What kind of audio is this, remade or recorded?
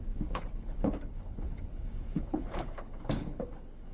remade